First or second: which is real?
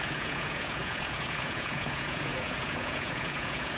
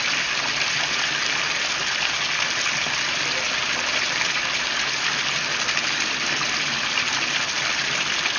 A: second